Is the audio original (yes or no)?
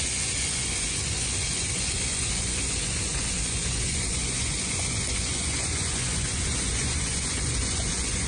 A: no